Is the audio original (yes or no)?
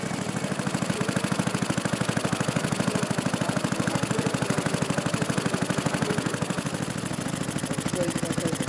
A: yes